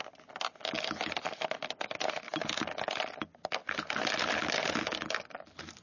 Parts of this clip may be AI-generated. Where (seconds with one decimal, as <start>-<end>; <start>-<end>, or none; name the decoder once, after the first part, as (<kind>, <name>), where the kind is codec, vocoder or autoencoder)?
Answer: none